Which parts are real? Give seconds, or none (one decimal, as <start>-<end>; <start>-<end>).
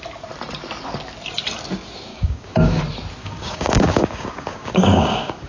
0.0-2.1; 2.8-3.2